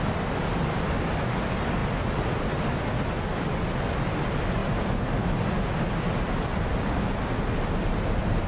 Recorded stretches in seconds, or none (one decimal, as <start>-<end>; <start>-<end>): 0.0-8.5